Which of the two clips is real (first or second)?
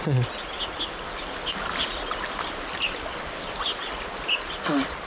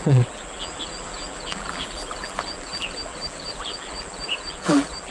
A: first